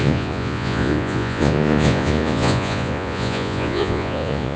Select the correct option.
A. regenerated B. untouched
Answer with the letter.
A